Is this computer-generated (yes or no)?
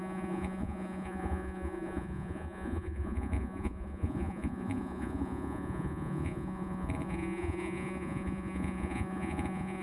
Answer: yes